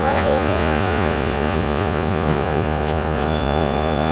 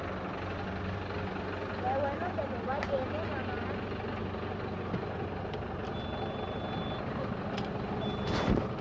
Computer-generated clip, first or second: first